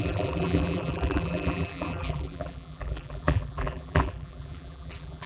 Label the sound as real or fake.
fake